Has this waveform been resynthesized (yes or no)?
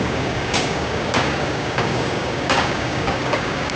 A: yes